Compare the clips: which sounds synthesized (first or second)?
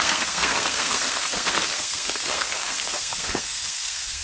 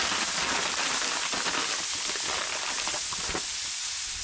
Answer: first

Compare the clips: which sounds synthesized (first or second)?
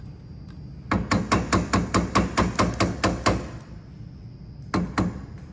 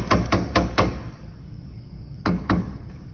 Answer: second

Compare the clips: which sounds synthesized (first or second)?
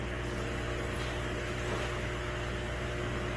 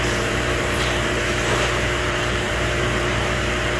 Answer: second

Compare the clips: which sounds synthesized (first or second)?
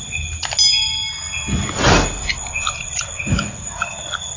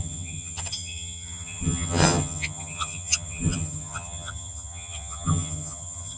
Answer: second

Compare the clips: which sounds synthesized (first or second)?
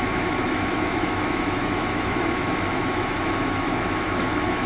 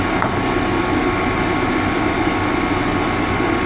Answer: first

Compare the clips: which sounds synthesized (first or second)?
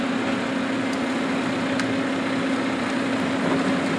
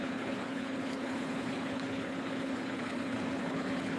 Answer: second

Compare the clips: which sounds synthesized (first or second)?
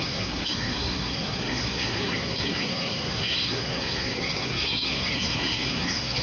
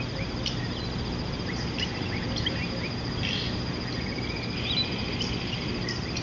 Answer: first